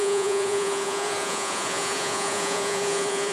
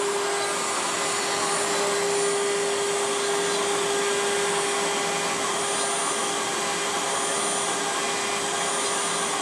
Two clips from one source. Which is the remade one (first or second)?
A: first